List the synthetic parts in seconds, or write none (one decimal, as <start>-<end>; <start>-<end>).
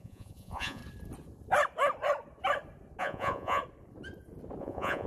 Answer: 0.0-0.8; 3.0-3.6; 4.6-5.1